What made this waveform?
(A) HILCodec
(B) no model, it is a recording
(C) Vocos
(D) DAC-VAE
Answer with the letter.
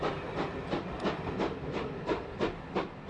B